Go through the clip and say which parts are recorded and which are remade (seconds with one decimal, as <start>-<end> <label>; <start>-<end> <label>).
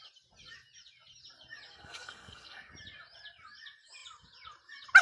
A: 0.0-1.7 recorded; 1.7-2.7 remade; 2.7-5.0 recorded